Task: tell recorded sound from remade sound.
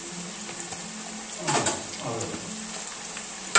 recorded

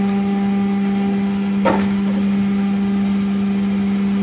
recorded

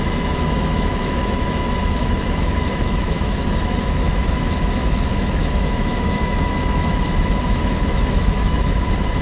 remade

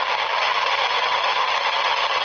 remade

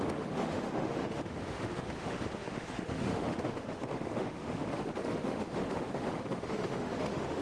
remade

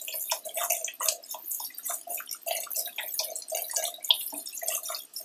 recorded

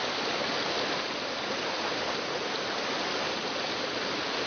recorded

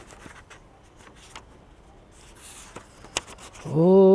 recorded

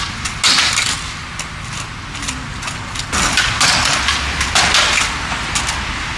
recorded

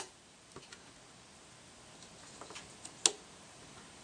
recorded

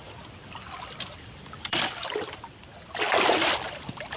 remade